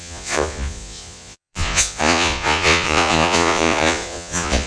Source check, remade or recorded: remade